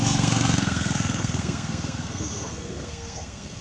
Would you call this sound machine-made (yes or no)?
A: yes